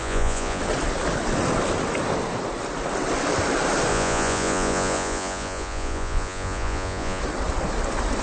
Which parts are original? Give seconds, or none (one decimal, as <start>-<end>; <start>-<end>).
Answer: 0.6-3.9; 7.2-8.2